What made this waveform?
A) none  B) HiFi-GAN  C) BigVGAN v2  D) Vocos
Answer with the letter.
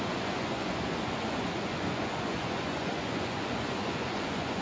D